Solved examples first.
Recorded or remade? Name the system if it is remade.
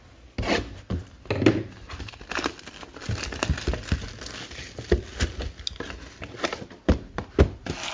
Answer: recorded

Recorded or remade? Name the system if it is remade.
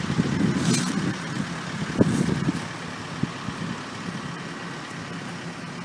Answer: recorded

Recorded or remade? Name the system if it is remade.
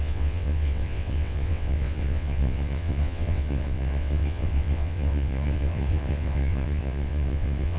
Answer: remade, vocoder, WaveNeXt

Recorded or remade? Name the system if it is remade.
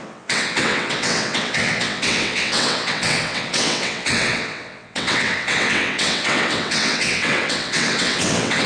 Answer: remade, vocoder, WaveNeXt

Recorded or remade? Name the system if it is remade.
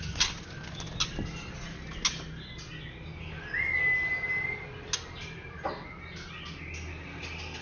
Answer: recorded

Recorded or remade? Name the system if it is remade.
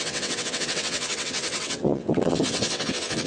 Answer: remade, vocoder, WaveNeXt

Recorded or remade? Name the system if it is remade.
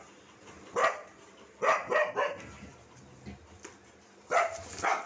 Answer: recorded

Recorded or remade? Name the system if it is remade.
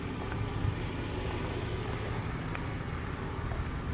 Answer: recorded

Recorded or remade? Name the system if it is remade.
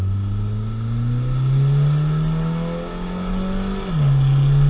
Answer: recorded